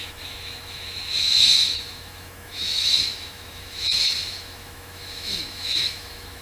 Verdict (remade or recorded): remade